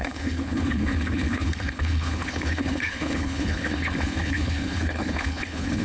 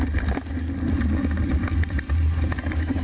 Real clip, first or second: second